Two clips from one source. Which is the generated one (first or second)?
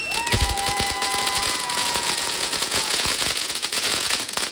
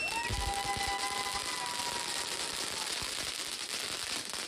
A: first